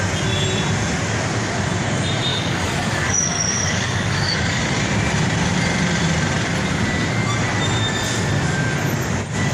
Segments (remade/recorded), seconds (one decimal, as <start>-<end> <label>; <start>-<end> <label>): 0.0-2.3 recorded; 2.3-4.6 remade; 4.6-9.5 recorded